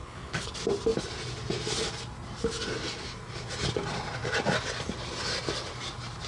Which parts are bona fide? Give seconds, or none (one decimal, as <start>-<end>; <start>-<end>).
0.5-6.3